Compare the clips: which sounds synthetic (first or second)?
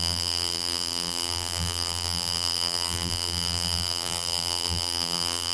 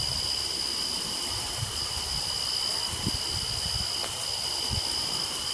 first